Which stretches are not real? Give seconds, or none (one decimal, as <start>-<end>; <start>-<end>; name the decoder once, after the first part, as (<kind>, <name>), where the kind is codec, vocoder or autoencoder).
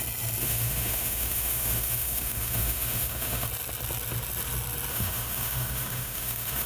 0.4-3.5 (autoencoder, DAC-VAE); 4.9-6.7